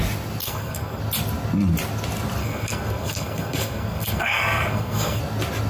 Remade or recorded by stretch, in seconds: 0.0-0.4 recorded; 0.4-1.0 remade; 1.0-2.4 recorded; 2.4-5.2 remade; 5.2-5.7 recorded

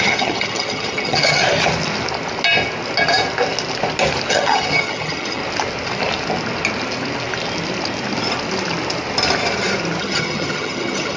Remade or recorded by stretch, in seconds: 0.0-1.4 remade; 1.4-4.3 recorded; 4.3-5.4 remade; 5.4-10.0 recorded; 10.0-11.2 remade

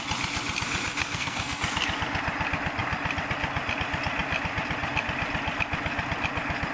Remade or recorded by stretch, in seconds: 0.0-1.0 recorded; 1.0-1.6 remade; 1.6-6.7 recorded

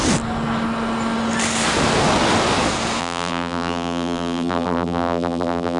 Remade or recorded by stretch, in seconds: 0.0-3.0 recorded; 3.0-5.8 remade